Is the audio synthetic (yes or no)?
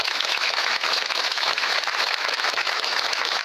yes